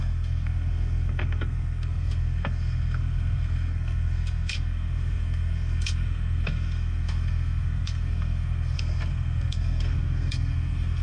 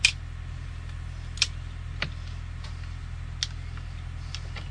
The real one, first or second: second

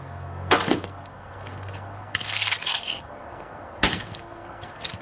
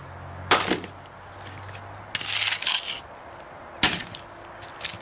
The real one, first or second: second